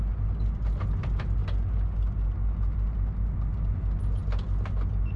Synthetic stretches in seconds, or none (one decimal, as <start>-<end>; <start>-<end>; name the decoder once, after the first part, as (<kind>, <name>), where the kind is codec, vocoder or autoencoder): none